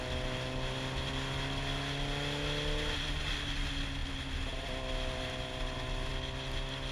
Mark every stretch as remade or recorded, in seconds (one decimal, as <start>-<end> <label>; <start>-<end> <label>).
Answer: 0.0-6.9 recorded

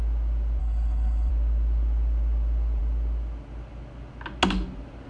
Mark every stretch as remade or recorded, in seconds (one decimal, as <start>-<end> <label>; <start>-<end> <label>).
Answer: 0.0-0.6 recorded; 0.6-1.3 remade; 1.3-5.1 recorded